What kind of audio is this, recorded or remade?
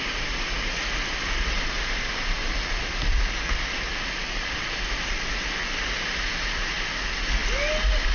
recorded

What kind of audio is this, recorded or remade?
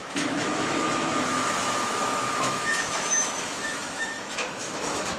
remade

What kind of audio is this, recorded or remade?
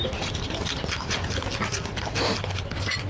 recorded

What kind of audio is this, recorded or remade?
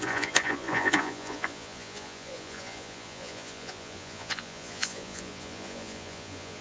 remade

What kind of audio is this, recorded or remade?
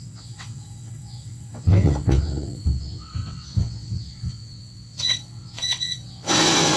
remade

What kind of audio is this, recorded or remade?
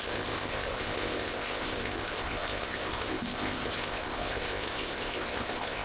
remade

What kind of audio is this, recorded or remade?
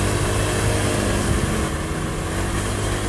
recorded